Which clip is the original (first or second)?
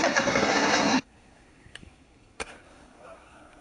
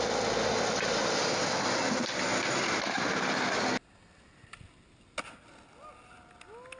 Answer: second